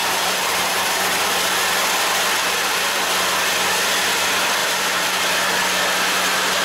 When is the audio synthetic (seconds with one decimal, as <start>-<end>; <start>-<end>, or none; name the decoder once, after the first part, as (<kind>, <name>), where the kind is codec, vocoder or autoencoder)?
0.0-1.0 (vocoder, BigVGAN v2); 2.4-3.1; 4.6-5.2